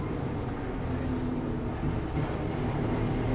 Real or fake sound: real